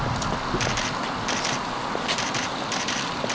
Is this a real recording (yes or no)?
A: yes